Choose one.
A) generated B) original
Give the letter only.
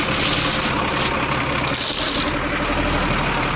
B